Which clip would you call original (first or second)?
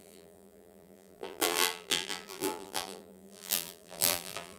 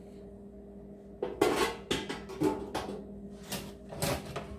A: second